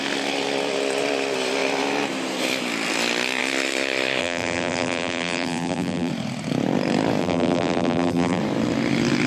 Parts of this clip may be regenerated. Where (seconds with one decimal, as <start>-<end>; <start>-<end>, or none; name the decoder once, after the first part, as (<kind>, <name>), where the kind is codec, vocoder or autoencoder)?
4.2-6.1 (vocoder, BigVGAN v2); 7.2-8.4